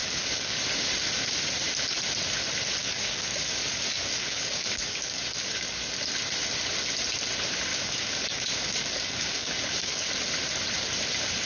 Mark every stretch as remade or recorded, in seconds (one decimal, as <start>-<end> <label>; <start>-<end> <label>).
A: 0.0-0.6 remade; 0.6-2.8 recorded; 2.8-6.0 remade; 6.0-7.7 recorded; 7.7-10.1 remade; 10.1-11.5 recorded